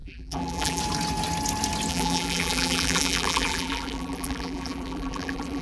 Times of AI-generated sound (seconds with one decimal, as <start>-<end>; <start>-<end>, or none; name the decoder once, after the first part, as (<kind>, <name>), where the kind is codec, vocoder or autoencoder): 0.0-0.8 (vocoder, BigVGAN v2); 1.9-5.6